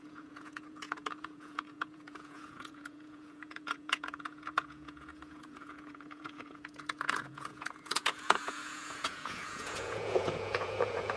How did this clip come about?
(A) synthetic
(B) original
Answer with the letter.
A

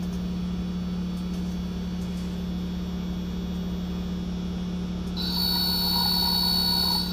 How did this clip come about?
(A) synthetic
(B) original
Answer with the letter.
B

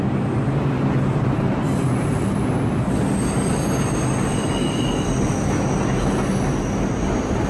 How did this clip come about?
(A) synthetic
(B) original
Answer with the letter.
B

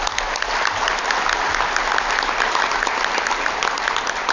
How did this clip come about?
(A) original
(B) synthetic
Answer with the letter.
A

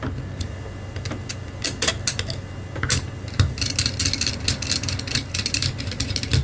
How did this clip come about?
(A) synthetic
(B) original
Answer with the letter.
B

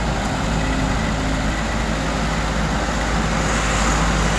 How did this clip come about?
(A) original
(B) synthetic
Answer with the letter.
A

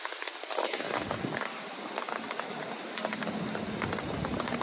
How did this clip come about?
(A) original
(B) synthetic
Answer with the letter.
A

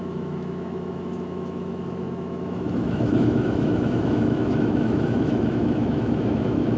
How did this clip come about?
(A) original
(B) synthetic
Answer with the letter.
B